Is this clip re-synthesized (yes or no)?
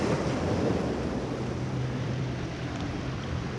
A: yes